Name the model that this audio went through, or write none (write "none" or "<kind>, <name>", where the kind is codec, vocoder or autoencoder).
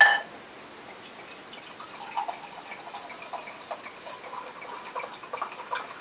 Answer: none